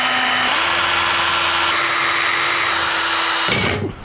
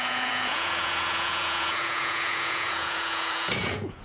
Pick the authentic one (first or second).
first